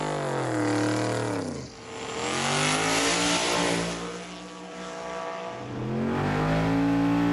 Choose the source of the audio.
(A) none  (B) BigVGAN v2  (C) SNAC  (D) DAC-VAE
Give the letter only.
A